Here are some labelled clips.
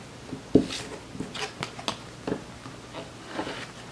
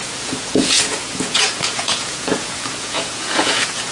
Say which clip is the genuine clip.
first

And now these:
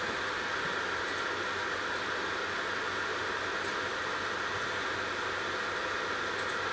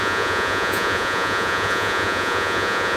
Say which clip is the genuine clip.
first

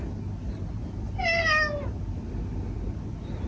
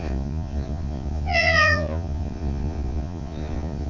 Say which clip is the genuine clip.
first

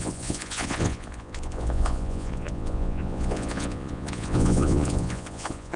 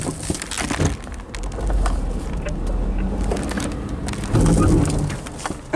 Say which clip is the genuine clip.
second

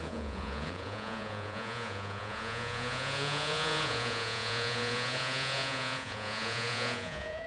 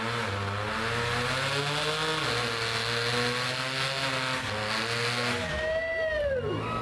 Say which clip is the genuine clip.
second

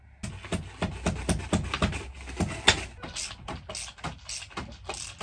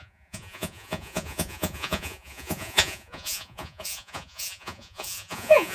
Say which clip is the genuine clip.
first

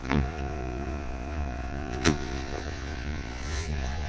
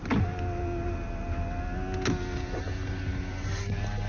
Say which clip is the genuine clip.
second